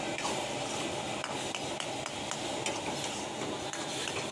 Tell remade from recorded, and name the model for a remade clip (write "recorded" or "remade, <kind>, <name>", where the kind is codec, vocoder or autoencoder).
recorded